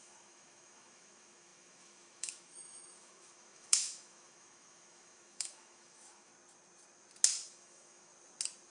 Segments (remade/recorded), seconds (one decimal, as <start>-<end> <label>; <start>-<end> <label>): 0.0-6.3 remade; 6.3-7.5 recorded; 7.5-8.1 remade; 8.1-8.7 recorded